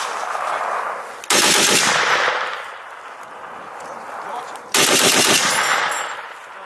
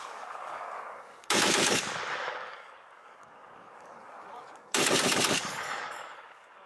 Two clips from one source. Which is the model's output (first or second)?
second